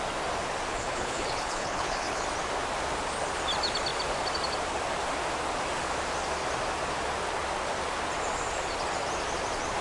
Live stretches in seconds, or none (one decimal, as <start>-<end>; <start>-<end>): 0.0-0.7; 2.2-9.8